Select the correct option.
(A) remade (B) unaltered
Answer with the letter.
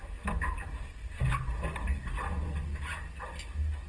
B